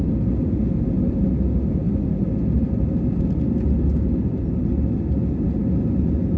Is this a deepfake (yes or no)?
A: no